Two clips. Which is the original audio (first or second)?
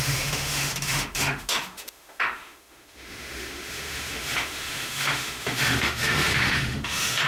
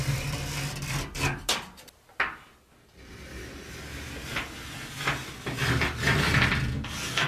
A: second